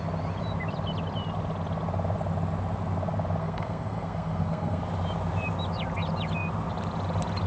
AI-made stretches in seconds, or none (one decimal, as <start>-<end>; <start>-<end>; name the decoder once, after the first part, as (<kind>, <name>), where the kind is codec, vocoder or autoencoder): 3.4-4.8 (codec, SNAC)

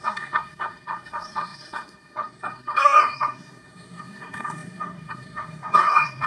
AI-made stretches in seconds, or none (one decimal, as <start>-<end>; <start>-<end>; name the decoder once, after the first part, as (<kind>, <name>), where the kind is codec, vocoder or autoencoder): 0.0-6.3 (codec, SNAC)